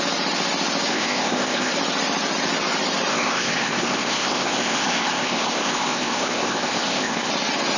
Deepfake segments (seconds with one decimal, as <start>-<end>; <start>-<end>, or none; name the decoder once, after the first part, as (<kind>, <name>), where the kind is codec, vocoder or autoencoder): 0.9-1.7 (codec, ZipCodec); 3.1-7.3

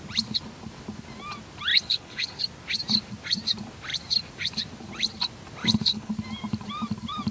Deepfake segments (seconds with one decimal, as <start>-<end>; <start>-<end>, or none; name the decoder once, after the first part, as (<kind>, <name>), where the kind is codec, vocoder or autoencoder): 1.7-2.4 (codec, HILCodec); 5.6-6.1

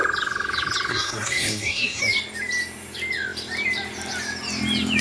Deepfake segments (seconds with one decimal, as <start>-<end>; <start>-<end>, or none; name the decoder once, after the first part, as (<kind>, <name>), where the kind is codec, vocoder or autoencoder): 0.9-2.0 (codec, SNAC)

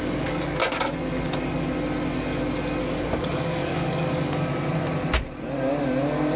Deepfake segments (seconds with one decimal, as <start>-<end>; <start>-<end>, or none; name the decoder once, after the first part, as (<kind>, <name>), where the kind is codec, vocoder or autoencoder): 0.0-0.6 (codec, DAC); 2.8-4.5

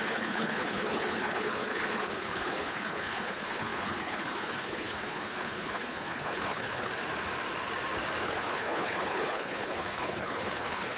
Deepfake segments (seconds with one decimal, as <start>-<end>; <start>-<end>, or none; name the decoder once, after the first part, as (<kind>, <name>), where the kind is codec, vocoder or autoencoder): 0.0-6.9 (codec, HILCodec); 8.2-11.0

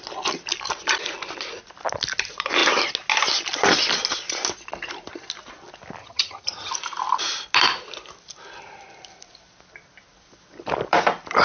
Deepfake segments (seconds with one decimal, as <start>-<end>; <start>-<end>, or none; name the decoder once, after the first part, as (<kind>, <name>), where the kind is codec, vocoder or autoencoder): 6.0-6.7 (vocoder, HiFi-GAN)

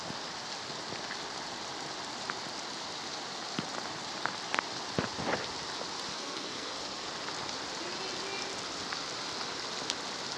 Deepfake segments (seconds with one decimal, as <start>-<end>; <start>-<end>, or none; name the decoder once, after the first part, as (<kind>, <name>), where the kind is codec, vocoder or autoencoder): 6.1-7.1 (codec, SNAC)

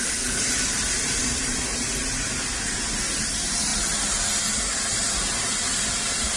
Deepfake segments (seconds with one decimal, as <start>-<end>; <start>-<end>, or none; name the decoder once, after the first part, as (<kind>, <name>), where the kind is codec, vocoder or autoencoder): none